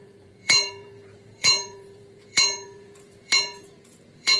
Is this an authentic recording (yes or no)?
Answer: no